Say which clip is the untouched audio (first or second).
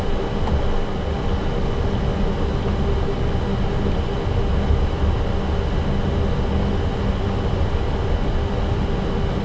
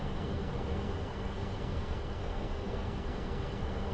first